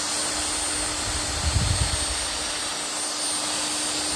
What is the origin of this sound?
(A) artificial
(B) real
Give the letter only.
B